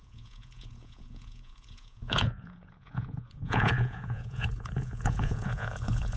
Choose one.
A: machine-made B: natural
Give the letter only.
A